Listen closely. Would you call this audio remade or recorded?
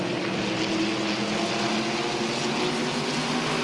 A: recorded